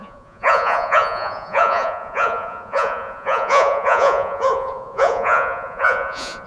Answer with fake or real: fake